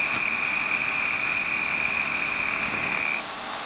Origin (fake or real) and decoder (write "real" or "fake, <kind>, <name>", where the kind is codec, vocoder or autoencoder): real